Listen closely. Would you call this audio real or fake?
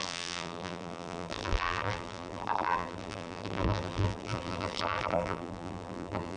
fake